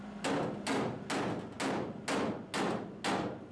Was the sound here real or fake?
real